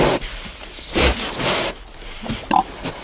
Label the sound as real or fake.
real